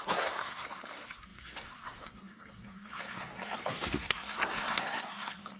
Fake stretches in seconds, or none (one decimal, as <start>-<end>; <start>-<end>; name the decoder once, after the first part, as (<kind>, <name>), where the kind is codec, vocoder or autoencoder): 0.0-5.6 (codec, SNAC)